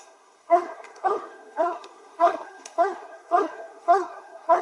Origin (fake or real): fake